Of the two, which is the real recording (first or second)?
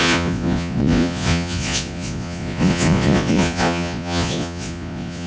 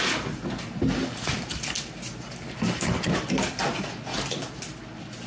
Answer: second